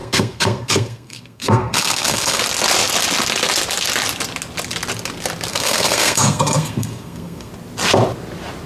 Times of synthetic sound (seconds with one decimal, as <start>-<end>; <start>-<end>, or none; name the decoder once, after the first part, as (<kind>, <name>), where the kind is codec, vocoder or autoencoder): 0.0-2.4 (codec, SNAC); 5.5-7.5